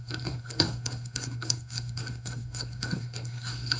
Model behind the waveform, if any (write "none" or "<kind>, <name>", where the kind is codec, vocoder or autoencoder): codec, SNAC